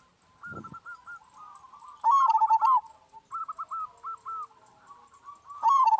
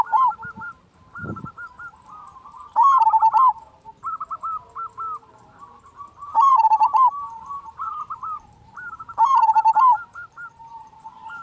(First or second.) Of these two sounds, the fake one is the second